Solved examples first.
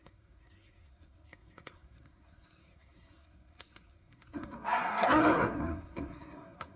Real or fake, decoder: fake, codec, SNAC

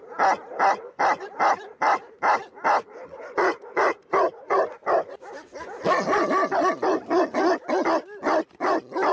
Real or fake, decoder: real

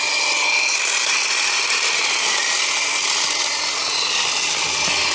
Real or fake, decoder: real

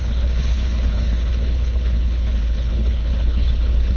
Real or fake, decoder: fake, codec, HILCodec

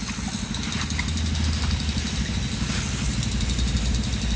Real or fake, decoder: real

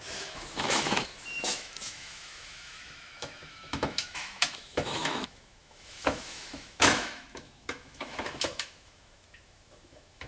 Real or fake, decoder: fake, autoencoder, DAC-VAE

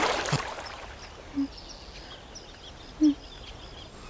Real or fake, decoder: real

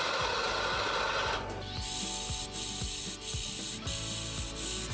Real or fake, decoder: real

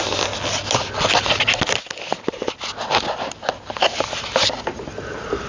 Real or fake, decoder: real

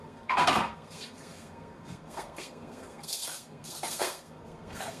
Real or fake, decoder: fake, codec, SNAC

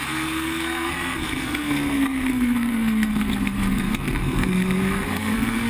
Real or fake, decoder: fake, codec, SNAC